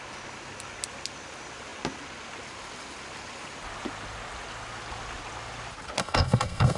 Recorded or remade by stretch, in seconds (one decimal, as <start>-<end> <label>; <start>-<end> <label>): 0.0-6.0 recorded; 6.0-6.8 remade